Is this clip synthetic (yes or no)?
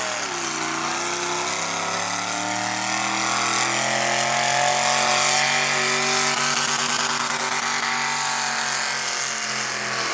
no